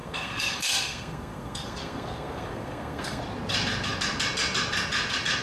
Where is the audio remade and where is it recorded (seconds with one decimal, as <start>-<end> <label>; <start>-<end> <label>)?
0.0-3.2 remade; 3.2-5.4 recorded